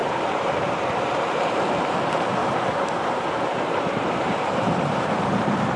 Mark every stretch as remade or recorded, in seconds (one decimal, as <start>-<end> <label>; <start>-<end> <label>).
0.0-1.6 remade; 1.6-2.4 recorded; 2.4-5.8 remade